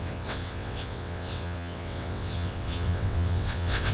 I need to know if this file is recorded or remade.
remade